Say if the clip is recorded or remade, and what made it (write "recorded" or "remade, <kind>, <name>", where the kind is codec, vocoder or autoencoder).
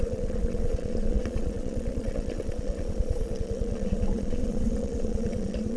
remade, vocoder, Vocos